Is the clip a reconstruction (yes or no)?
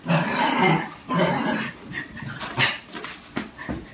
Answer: no